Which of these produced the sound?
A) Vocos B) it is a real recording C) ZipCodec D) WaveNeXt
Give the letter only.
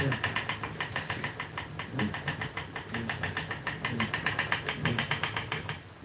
B